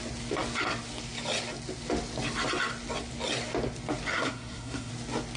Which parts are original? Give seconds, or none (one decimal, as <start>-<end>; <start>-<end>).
0.0-4.1; 4.9-5.4